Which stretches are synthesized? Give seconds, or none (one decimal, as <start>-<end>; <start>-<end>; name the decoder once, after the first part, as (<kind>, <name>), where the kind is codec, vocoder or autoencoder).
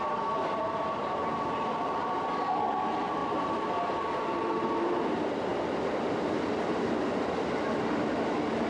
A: 3.2-4.2 (vocoder, BigVGAN v2); 5.5-7.0